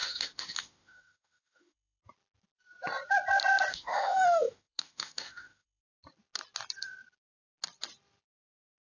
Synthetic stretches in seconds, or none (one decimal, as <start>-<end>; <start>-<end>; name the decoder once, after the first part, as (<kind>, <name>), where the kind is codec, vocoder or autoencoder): 0.0-2.0 (autoencoder, DAC-VAE); 3.7-5.8